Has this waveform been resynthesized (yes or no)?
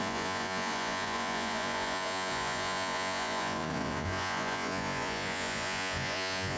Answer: yes